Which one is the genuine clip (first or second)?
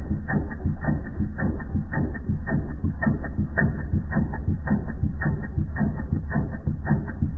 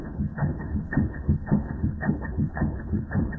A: first